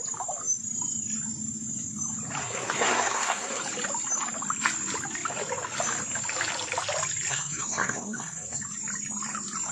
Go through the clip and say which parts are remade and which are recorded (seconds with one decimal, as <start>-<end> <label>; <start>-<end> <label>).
0.0-2.4 recorded; 2.4-3.6 remade; 3.6-7.3 recorded; 7.3-8.6 remade; 8.6-9.7 recorded

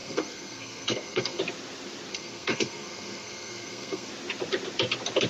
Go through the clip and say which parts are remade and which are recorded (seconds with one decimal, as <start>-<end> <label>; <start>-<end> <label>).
0.0-1.4 remade; 1.4-2.1 recorded; 2.1-4.1 remade; 4.1-5.3 recorded

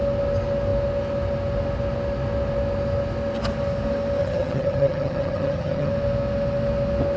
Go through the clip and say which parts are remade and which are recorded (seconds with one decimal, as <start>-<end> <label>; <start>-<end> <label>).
0.0-4.2 recorded; 4.2-5.9 remade; 5.9-7.2 recorded

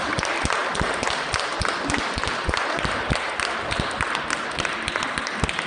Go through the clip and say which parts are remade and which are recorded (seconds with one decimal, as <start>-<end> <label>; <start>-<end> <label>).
0.0-5.7 recorded

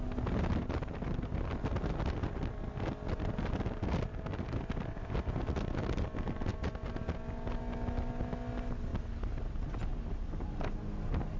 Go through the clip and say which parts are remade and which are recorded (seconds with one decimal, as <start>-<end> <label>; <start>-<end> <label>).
0.0-11.4 recorded

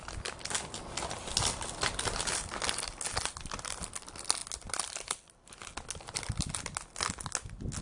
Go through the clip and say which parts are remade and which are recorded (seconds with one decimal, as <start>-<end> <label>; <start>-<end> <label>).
0.0-7.8 recorded

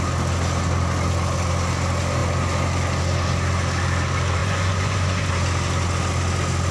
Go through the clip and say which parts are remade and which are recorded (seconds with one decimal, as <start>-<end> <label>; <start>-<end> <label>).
0.0-4.4 recorded; 4.4-5.3 remade; 5.3-6.7 recorded

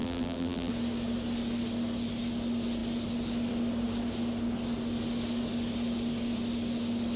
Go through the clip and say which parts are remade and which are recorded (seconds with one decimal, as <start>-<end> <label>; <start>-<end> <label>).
0.0-0.7 remade; 0.7-7.2 recorded